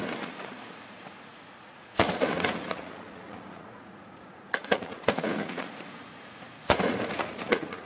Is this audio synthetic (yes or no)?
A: yes